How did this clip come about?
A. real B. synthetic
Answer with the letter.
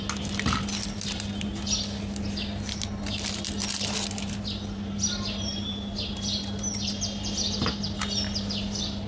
A